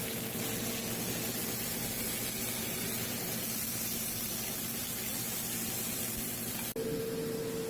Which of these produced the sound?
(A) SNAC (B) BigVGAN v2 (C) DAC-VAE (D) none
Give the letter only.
D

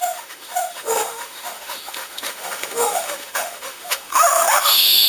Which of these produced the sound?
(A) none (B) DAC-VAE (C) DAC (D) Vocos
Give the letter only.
B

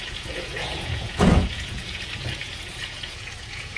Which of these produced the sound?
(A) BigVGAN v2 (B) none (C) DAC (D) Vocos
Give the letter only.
D